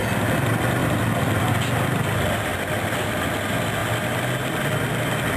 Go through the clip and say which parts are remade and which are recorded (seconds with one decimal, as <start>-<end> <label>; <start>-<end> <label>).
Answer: 0.0-0.8 recorded; 0.8-1.5 remade; 1.5-2.5 recorded; 2.5-3.3 remade; 3.3-3.8 recorded; 3.8-4.8 remade; 4.8-5.4 recorded